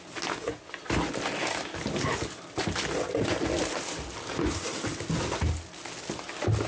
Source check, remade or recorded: recorded